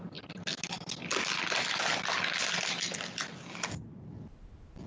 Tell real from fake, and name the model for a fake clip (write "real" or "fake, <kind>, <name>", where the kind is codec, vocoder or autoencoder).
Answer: real